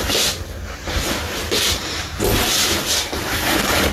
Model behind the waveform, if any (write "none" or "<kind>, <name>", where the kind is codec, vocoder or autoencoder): none